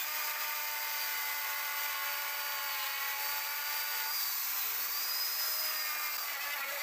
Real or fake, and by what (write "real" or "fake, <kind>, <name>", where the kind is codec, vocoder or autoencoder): fake, vocoder, BigVGAN v2